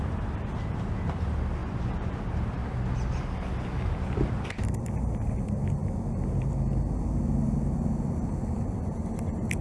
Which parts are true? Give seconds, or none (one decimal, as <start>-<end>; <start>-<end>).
0.0-1.6; 2.2-9.6